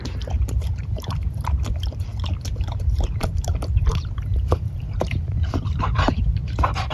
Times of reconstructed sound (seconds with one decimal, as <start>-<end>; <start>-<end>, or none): 0.0-2.1; 2.7-6.9